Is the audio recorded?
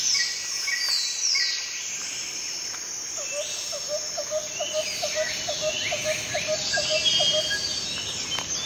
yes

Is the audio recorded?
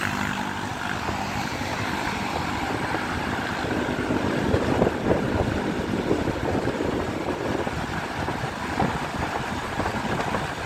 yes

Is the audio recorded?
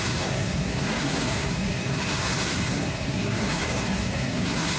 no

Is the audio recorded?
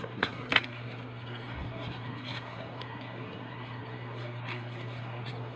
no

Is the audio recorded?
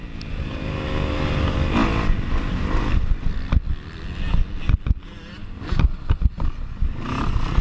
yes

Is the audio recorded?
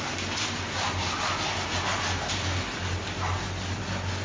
yes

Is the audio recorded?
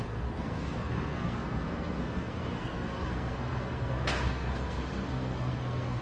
no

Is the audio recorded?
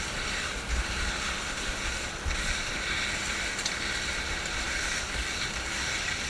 yes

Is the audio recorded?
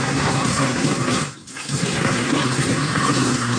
no